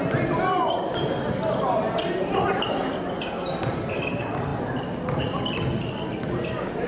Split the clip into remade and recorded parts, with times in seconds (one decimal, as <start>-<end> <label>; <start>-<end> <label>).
0.0-6.9 recorded